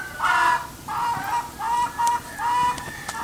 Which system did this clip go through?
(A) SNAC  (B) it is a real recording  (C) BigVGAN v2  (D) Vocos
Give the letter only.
B